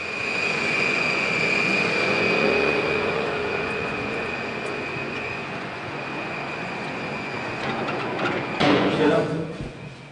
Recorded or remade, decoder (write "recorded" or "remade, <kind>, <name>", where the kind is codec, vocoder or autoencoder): remade, vocoder, Vocos